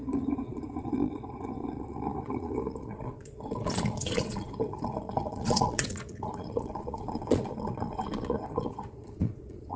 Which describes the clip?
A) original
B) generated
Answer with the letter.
B